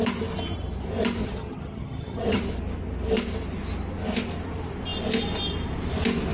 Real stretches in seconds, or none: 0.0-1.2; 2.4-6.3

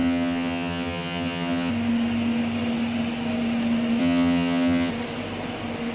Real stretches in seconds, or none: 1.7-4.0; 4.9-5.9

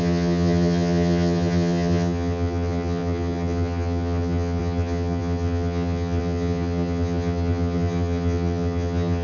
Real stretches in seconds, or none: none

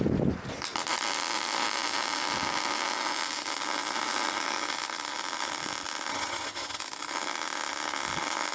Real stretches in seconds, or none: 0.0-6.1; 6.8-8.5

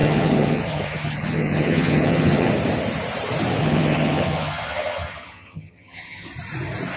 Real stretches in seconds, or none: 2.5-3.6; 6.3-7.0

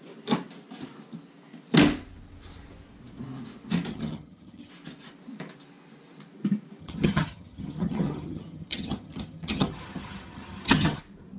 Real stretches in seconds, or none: 0.0-3.9; 4.7-6.8; 11.0-11.4

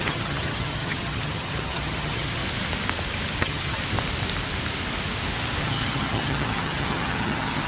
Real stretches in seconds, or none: 2.4-3.4; 3.8-5.6